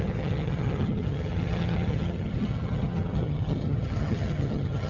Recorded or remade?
remade